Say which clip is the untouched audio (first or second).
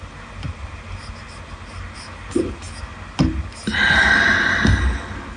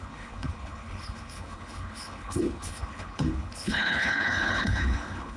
first